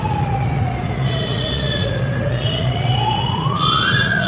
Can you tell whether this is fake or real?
fake